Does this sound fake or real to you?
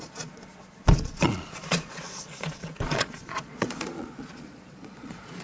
fake